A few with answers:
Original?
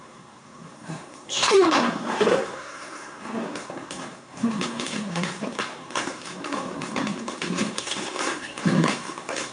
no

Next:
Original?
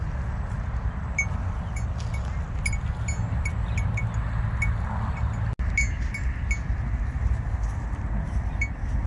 yes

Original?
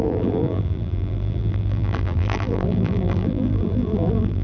no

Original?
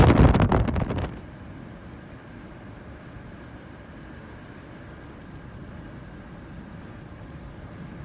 no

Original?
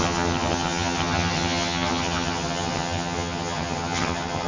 no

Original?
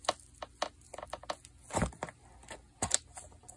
yes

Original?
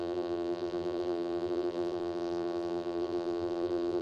no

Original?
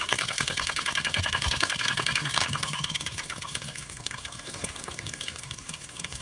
no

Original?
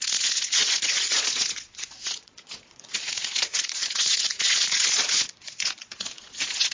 no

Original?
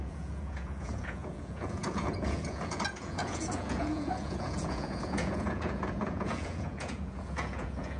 no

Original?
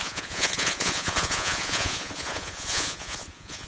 no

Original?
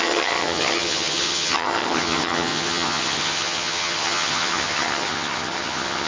no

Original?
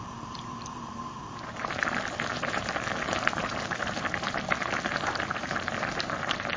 no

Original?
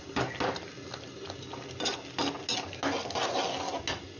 yes